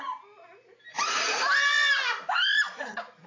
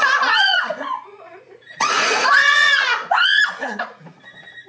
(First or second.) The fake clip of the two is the second